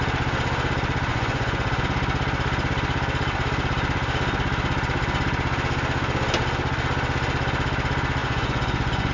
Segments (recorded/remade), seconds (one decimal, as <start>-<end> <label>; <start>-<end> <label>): 0.0-1.1 recorded; 1.1-1.8 remade; 1.8-8.2 recorded; 8.2-9.1 remade